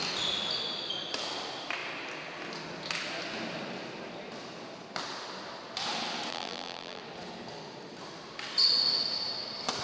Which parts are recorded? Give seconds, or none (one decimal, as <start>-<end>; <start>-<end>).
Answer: 0.0-6.3; 7.0-9.8